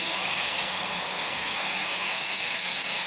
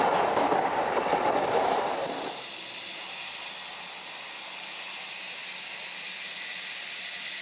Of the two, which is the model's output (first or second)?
first